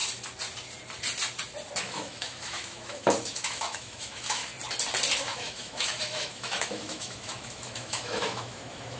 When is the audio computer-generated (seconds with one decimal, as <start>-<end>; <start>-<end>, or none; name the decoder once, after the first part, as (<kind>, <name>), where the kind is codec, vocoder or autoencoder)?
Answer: 1.8-4.5 (autoencoder, DAC-VAE); 5.2-9.0